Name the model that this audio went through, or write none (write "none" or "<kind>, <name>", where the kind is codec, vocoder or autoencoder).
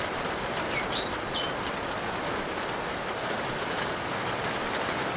none